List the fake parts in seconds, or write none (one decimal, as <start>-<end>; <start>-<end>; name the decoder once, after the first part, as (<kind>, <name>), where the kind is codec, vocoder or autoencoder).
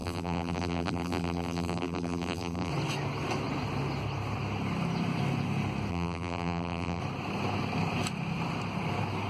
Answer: 0.0-2.7 (vocoder, BigVGAN v2); 5.9-7.0